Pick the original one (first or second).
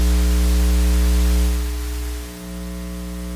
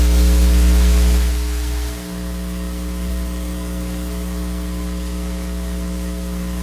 first